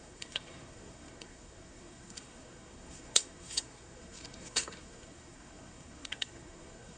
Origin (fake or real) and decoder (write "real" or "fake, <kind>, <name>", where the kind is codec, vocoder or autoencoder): fake, codec, SNAC